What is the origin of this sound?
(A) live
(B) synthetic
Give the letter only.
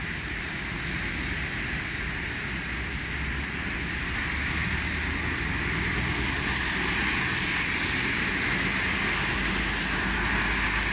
A